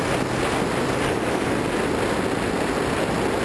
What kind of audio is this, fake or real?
real